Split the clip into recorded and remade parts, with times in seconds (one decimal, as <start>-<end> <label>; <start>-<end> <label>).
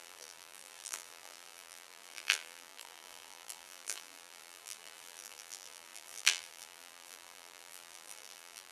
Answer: 0.0-8.7 remade